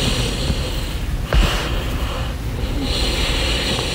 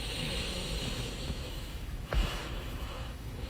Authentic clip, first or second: first